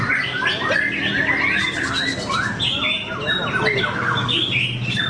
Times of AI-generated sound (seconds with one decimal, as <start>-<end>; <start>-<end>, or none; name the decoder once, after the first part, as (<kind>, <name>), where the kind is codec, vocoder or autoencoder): 3.8-4.5 (codec, DAC)